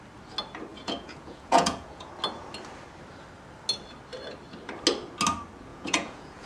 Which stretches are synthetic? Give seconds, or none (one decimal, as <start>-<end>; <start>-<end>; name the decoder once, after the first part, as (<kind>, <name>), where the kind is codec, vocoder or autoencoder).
0.7-2.1 (vocoder, Vocos); 5.7-6.5